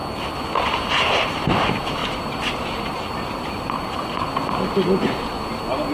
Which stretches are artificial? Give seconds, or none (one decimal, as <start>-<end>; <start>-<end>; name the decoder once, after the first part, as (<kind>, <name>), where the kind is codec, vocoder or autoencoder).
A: 2.0-4.3 (vocoder, BigVGAN v2)

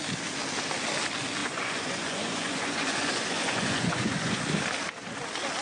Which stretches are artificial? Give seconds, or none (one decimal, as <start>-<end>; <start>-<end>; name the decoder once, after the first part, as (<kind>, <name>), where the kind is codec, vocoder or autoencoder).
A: 1.4-4.4 (vocoder, Vocos)

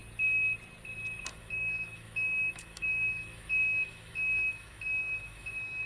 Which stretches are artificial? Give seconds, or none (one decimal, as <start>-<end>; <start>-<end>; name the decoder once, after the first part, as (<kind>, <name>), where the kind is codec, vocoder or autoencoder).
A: 1.3-5.9 (autoencoder, DAC-VAE)

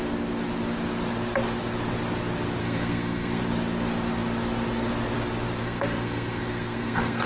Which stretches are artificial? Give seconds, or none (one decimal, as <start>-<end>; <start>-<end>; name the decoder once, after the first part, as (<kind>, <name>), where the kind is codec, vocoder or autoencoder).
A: 2.6-3.4 (codec, SNAC); 5.6-7.3

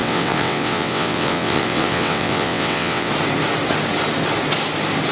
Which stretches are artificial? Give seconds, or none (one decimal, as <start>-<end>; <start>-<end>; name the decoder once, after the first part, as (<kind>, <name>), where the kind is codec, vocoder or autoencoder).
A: 0.0-3.1 (vocoder, WaveNeXt)

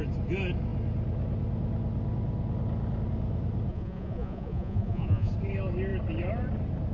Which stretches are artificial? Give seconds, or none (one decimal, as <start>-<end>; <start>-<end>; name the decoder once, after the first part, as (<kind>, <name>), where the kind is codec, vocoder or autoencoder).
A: 3.7-5.3 (vocoder, Vocos)